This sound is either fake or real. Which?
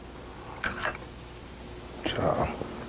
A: real